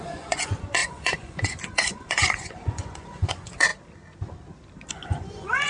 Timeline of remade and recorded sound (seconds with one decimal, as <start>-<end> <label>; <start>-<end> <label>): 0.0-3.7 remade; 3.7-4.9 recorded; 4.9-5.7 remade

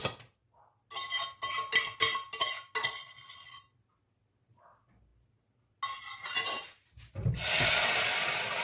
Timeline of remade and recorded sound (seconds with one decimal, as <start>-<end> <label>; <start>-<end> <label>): 0.0-2.8 recorded; 2.8-3.6 remade; 3.6-8.6 recorded

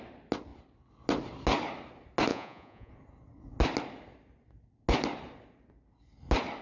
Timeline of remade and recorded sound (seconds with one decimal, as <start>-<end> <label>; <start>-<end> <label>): 0.0-2.3 recorded; 2.3-2.9 remade; 2.9-6.6 recorded